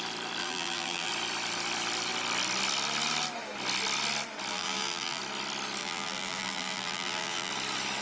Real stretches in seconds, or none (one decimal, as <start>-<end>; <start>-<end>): 0.0-0.4; 1.1-4.5; 5.2-5.8; 7.5-8.0